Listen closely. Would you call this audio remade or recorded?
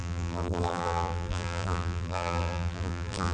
remade